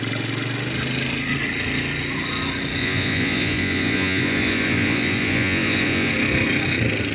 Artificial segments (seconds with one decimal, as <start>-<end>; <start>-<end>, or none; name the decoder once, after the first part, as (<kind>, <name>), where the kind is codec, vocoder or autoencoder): 2.8-6.1 (vocoder, Vocos)